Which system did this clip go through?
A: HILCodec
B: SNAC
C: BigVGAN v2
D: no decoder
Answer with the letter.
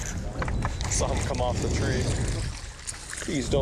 D